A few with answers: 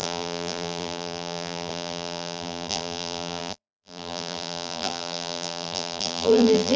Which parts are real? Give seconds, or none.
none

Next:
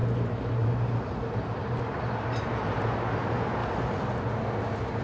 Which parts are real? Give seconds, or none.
3.0-3.6; 4.2-5.0

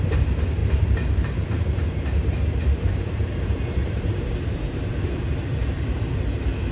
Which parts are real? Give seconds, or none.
4.9-6.1

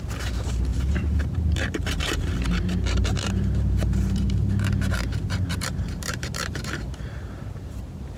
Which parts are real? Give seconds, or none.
none

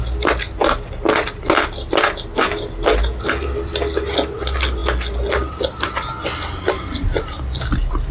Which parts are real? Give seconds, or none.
0.0-8.1